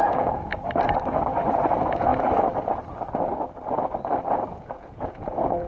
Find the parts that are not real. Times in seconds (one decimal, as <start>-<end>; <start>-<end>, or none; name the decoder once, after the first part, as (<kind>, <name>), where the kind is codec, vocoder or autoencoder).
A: 0.0-0.5 (vocoder, Vocos); 1.5-2.1; 4.3-5.7